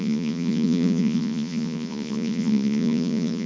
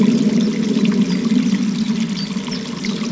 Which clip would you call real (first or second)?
second